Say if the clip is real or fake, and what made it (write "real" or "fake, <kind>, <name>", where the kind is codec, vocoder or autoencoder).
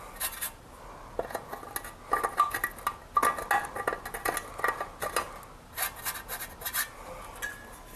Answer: real